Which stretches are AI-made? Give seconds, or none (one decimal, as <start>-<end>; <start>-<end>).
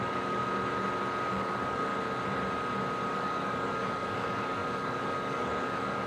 0.0-0.4; 1.3-1.9; 3.1-6.1